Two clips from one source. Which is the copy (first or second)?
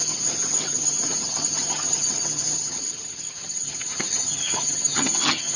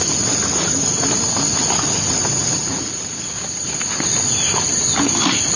first